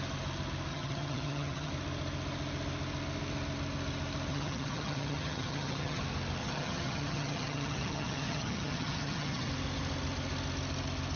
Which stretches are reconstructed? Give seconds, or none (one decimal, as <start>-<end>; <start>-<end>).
0.7-1.7; 4.3-6.0; 6.4-9.5